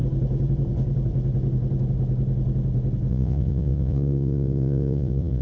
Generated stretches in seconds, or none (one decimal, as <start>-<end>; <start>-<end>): 3.1-5.4